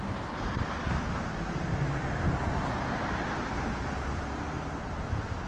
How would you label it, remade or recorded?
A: remade